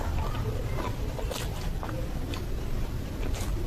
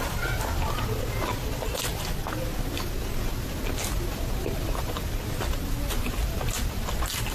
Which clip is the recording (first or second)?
second